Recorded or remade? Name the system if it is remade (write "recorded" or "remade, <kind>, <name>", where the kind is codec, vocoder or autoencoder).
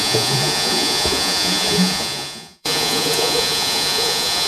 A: remade, vocoder, Vocos